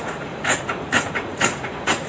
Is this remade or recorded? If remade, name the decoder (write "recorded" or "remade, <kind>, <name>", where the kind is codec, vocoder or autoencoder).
remade, vocoder, Vocos